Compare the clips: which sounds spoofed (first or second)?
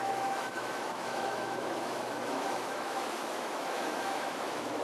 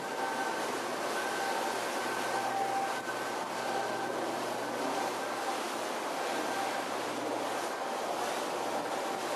first